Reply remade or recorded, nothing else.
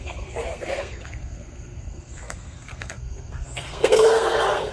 remade